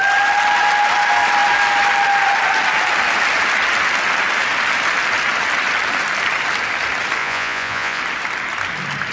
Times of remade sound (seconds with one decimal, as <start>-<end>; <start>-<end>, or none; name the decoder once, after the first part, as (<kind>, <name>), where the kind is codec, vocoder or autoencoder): 7.2-8.0 (vocoder, Vocos)